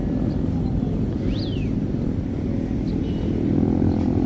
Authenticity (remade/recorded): recorded